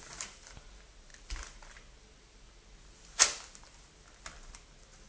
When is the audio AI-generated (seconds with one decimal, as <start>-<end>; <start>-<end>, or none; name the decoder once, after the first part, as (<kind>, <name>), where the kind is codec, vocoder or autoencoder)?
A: none